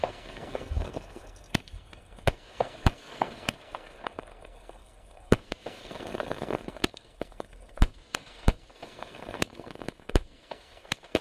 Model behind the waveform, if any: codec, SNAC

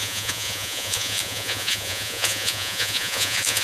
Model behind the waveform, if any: vocoder, Vocos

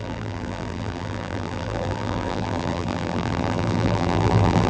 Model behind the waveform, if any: vocoder, BigVGAN v2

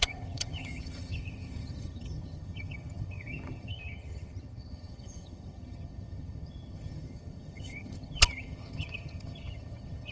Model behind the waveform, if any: vocoder, HiFi-GAN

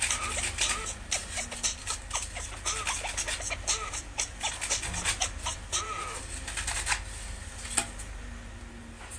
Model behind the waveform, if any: none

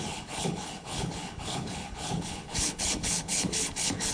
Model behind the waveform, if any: codec, HILCodec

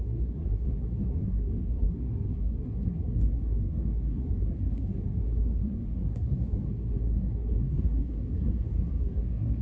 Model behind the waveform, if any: codec, SNAC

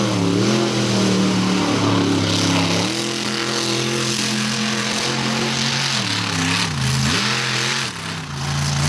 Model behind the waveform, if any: none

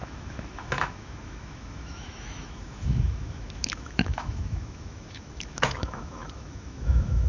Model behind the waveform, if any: autoencoder, DAC-VAE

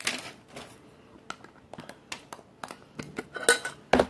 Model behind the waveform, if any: none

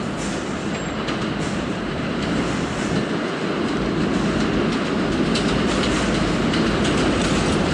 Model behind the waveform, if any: none